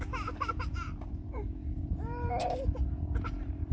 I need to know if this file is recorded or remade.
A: remade